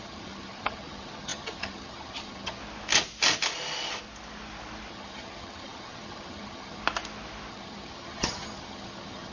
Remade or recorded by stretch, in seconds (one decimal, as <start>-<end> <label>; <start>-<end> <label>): 0.0-2.6 remade; 2.6-4.9 recorded; 4.9-6.8 remade; 6.8-7.5 recorded; 7.5-9.3 remade